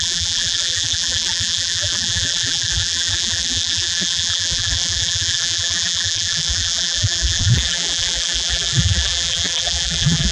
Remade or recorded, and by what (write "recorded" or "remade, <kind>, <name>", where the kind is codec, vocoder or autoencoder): remade, vocoder, BigVGAN v2